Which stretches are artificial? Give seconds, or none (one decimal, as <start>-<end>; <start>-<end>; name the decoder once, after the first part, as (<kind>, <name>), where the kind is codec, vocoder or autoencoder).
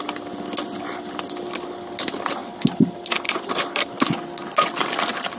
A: none